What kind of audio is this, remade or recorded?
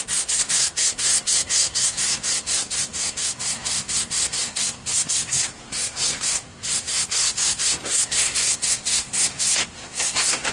remade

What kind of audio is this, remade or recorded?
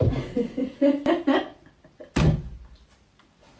recorded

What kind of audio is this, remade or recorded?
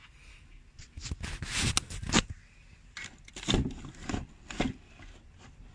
recorded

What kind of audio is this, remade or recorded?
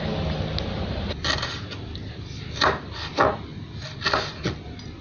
recorded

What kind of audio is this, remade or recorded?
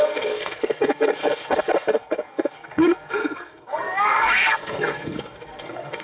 remade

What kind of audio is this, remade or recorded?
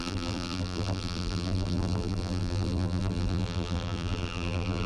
remade